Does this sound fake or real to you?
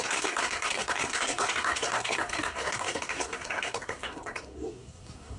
fake